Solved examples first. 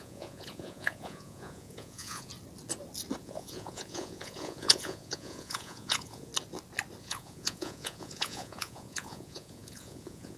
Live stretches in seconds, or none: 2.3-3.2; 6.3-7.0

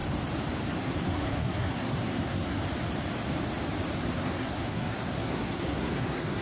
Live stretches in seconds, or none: 0.0-0.8; 2.6-4.1

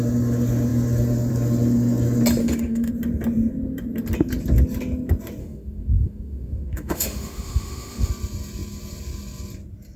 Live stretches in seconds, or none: 0.0-2.4; 2.9-5.4; 8.1-10.0

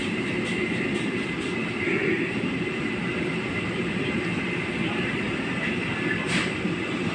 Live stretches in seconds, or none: 0.0-7.1

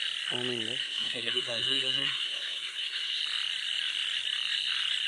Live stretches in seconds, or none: 0.0-0.8; 3.2-5.1

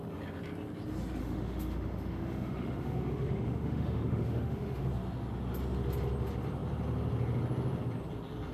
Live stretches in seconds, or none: 0.0-1.2; 4.8-8.5

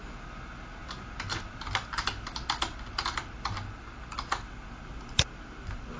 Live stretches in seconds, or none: 0.0-6.0

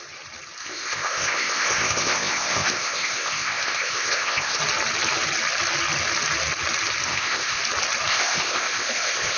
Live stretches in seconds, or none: 0.0-0.6; 4.6-7.1; 7.6-8.1